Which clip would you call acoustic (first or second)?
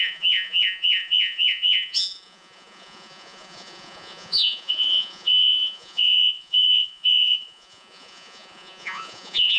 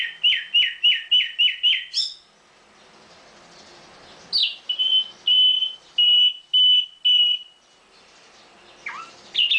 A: second